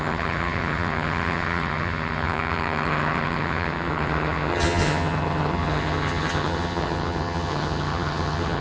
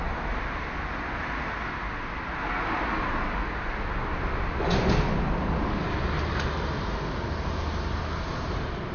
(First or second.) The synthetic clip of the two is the first